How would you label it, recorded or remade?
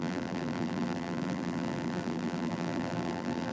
remade